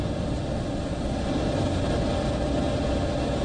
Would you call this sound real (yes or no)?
yes